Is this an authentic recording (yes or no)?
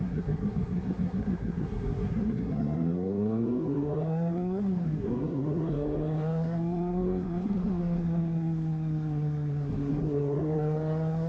no